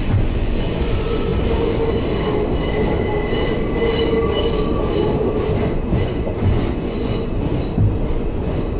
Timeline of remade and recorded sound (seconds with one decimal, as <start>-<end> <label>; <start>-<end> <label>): 0.0-1.3 remade; 1.3-5.6 recorded; 5.6-7.5 remade; 7.5-8.1 recorded; 8.1-8.8 remade